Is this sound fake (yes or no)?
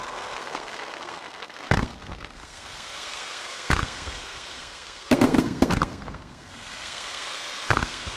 yes